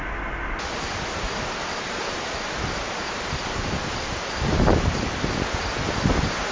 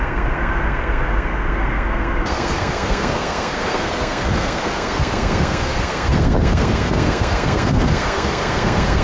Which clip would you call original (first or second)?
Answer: first